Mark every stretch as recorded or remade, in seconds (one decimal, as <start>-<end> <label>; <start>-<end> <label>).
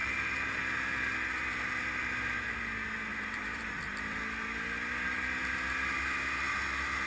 0.0-0.6 remade; 0.6-3.1 recorded; 3.1-3.8 remade; 3.8-7.1 recorded